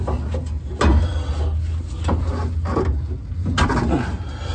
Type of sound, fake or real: real